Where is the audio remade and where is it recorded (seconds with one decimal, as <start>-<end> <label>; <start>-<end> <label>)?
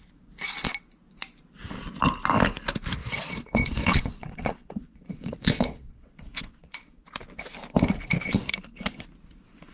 0.0-3.0 recorded; 3.0-7.1 remade; 7.1-9.7 recorded